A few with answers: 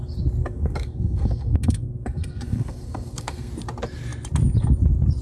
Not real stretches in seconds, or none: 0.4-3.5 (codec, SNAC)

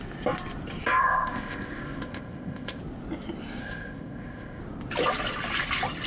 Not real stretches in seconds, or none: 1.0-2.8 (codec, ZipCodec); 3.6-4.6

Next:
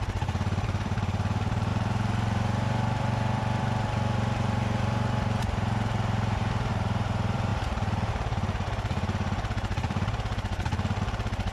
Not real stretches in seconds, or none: 0.0-11.5 (vocoder, BigVGAN v2)